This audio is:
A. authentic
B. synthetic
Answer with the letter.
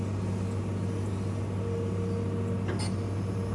A